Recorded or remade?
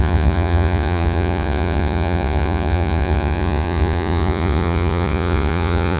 remade